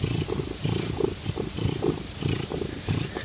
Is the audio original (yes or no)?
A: yes